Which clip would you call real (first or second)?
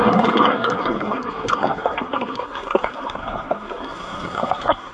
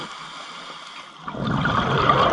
second